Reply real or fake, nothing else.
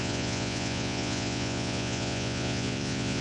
fake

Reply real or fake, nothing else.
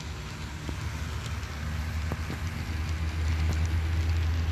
real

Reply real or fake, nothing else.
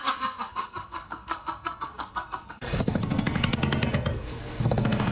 fake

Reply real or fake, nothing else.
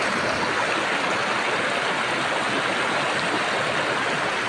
real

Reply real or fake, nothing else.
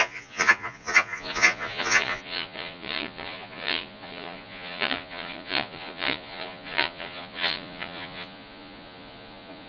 fake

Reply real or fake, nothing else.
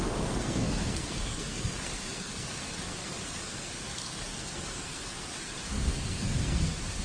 fake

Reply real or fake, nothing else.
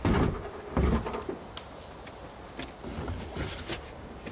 real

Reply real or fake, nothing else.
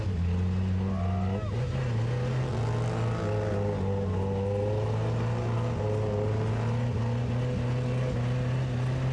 real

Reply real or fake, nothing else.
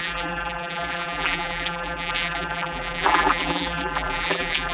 fake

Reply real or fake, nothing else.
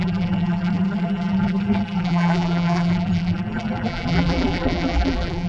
fake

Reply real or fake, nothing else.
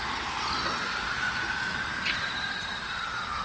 real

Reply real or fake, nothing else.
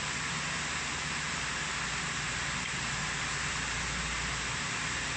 real